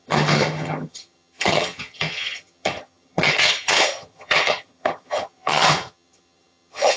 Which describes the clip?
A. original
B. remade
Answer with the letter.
B